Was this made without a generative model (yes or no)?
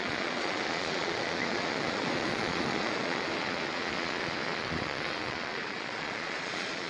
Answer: no